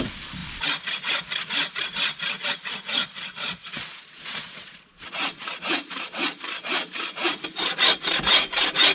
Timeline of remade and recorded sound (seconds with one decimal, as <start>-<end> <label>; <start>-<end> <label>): 0.0-3.0 recorded; 3.0-7.3 remade; 7.3-8.9 recorded